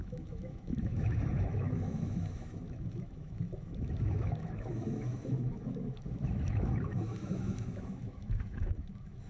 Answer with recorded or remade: remade